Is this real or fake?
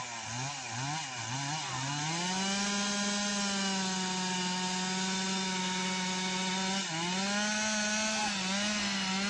real